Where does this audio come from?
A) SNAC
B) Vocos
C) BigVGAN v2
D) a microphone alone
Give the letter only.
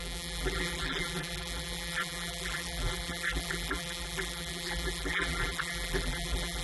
C